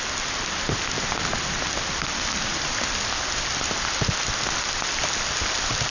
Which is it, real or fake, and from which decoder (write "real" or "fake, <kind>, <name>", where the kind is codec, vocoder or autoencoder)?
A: real